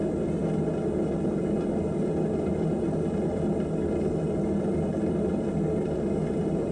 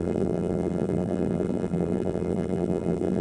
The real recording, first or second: first